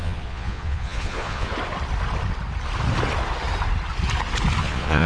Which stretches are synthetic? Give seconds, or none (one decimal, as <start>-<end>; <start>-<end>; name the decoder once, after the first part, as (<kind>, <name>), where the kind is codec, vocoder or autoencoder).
0.0-1.5 (vocoder, Vocos); 4.6-5.1